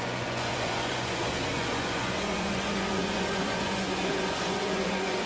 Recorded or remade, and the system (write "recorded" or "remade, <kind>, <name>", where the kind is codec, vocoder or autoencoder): remade, vocoder, Vocos